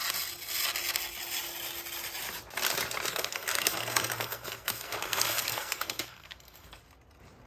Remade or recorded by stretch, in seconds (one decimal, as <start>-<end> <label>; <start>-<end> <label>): 0.0-3.1 recorded; 3.1-6.8 remade; 6.8-7.5 recorded